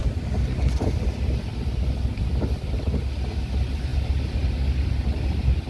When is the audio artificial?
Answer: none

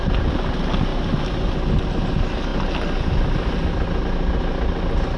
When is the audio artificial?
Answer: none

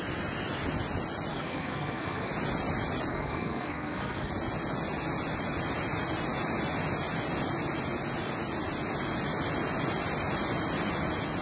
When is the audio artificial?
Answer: 1.3-2.3 (codec, SNAC); 3.1-4.3

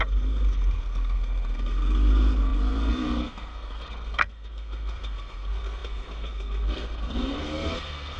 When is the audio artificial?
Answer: 0.0-8.2 (codec, SNAC)